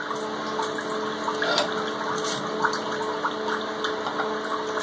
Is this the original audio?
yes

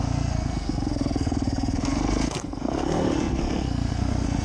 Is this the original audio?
no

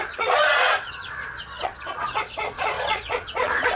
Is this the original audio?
no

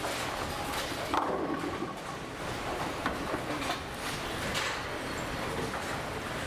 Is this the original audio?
yes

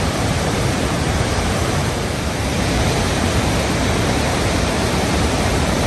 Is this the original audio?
no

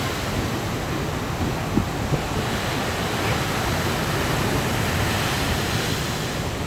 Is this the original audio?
yes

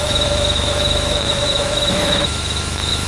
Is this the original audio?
no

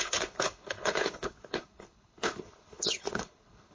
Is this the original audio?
no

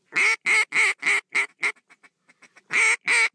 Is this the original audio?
yes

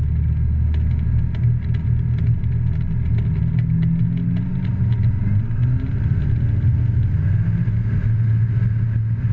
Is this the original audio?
yes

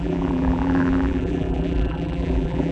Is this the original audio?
no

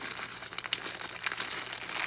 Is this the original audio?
yes